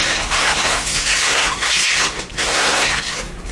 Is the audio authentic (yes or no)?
no